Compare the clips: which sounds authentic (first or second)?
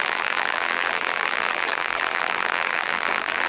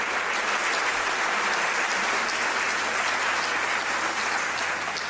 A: second